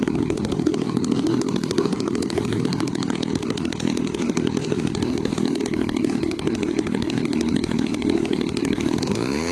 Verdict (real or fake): fake